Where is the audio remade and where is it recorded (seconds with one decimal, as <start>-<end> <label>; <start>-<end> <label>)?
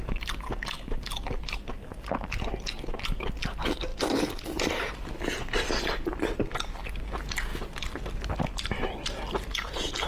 0.0-3.9 recorded; 3.9-4.9 remade; 4.9-7.5 recorded; 7.5-8.4 remade; 8.4-10.1 recorded